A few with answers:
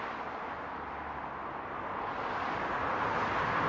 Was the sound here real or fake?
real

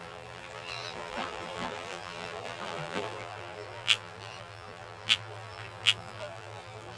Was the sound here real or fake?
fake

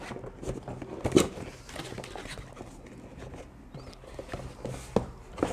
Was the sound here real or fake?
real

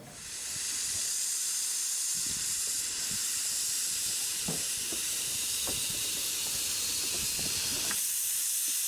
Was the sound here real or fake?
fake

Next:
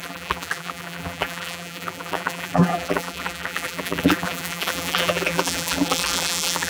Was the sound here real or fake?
fake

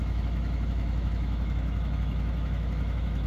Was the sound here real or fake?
fake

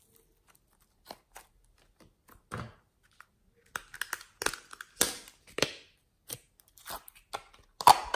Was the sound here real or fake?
real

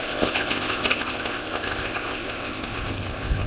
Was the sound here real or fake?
fake